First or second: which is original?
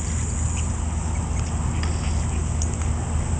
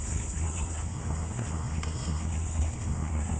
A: first